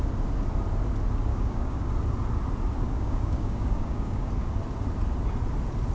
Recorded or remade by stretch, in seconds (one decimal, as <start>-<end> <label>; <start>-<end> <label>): 0.0-1.3 recorded; 1.3-1.9 remade; 1.9-2.8 recorded; 2.8-4.3 remade; 4.3-5.9 recorded